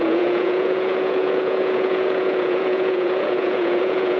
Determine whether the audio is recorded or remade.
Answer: remade